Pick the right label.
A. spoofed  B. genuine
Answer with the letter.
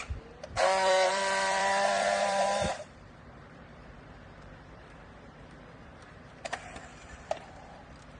A